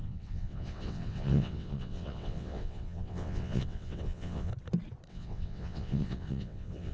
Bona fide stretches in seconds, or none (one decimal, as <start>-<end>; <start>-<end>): 4.5-5.1